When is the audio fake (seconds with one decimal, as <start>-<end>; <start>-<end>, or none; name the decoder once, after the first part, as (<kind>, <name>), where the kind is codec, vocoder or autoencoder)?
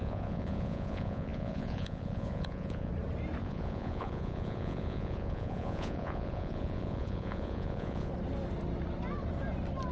0.0-2.9 (vocoder, Vocos); 3.4-8.1